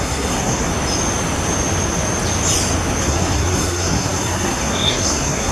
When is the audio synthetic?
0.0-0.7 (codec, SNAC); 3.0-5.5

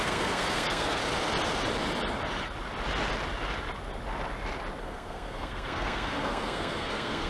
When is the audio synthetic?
0.0-1.0 (codec, SNAC); 4.8-7.3